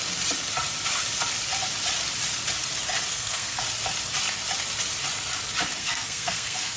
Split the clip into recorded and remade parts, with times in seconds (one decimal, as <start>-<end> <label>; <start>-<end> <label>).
0.0-3.1 recorded; 3.1-3.6 remade; 3.6-5.8 recorded; 5.8-6.8 remade